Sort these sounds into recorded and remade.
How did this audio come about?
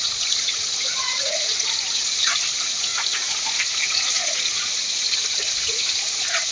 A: remade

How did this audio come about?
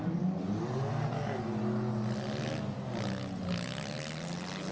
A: recorded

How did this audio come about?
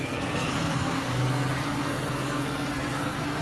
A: remade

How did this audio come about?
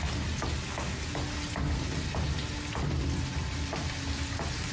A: recorded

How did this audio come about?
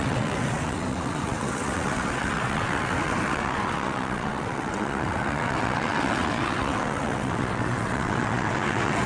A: remade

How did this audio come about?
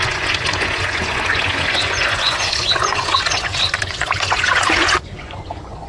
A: remade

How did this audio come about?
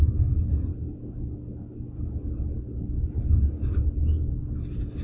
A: recorded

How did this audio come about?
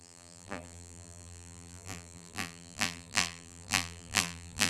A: remade